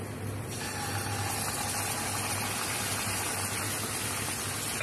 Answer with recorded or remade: recorded